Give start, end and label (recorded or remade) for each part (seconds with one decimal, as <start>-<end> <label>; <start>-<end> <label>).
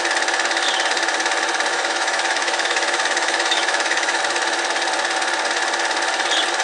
0.0-1.7 recorded; 1.7-4.2 remade; 4.2-6.6 recorded